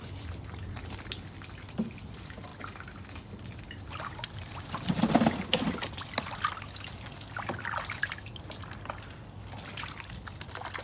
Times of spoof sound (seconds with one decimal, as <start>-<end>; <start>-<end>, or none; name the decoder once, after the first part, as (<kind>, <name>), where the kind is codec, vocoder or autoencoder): none